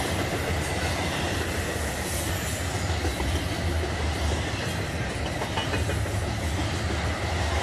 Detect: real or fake real